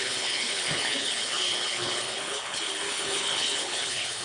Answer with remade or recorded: remade